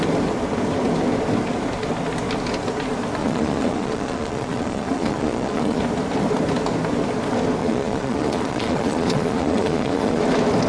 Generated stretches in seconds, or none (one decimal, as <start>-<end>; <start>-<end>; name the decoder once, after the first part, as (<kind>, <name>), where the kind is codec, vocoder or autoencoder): 3.2-5.8 (vocoder, Vocos); 7.6-10.2